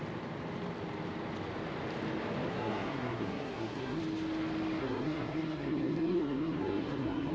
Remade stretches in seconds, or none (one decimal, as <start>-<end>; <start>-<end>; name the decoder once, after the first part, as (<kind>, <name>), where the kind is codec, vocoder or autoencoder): 2.5-4.0 (codec, SNAC); 4.8-7.3